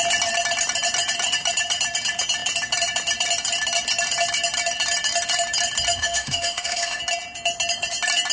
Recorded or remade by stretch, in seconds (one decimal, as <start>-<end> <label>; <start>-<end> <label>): 0.0-5.9 recorded; 5.9-7.0 remade; 7.0-8.3 recorded